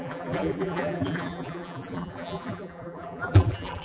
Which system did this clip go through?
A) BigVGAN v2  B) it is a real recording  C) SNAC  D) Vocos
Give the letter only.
A